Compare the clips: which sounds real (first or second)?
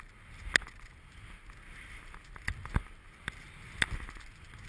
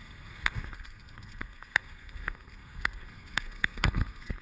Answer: first